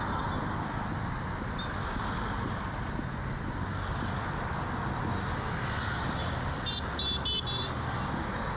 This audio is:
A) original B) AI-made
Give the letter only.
A